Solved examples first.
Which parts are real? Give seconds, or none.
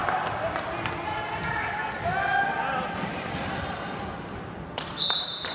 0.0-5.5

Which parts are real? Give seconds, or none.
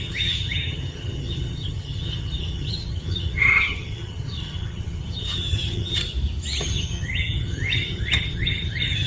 6.0-6.6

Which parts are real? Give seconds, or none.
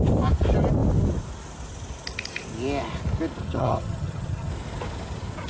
0.0-3.4; 4.5-5.5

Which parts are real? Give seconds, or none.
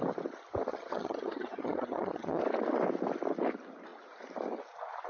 0.0-0.7; 2.4-5.1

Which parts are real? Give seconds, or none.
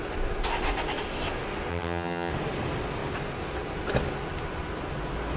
0.0-1.7; 2.3-5.4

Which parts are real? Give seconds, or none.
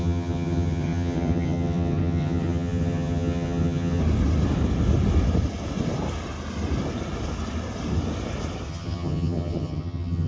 4.0-8.7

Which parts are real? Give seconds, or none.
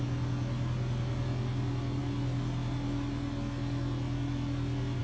0.0-5.0